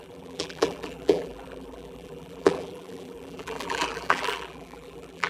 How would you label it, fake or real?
fake